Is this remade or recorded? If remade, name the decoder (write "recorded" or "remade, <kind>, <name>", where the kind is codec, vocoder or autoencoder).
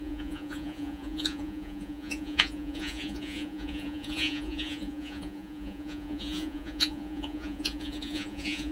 remade, vocoder, Vocos